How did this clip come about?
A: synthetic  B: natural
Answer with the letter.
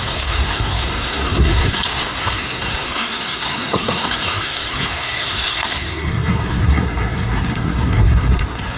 A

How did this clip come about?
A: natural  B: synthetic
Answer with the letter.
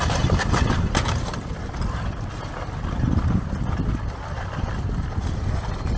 A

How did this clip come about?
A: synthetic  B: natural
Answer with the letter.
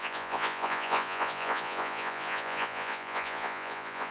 A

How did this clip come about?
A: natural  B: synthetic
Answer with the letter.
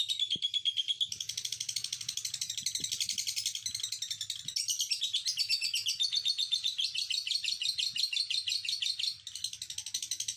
A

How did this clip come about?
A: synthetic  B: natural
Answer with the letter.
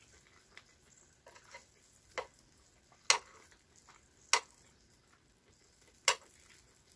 B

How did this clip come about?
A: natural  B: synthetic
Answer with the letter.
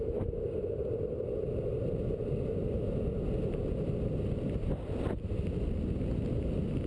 A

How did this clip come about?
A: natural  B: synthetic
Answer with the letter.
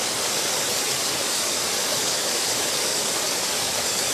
B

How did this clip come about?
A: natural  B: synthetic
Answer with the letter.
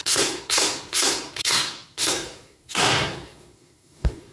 B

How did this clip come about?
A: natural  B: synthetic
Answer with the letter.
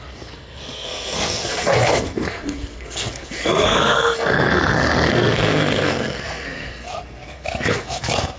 B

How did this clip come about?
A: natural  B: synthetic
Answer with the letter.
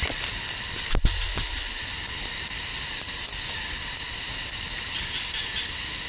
A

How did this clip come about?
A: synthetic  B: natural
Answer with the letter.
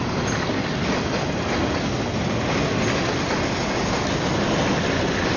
B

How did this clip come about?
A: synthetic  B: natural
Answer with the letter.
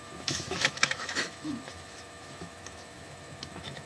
A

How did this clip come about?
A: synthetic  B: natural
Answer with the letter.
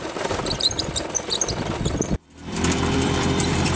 A